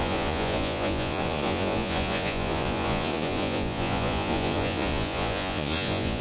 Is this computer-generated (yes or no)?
yes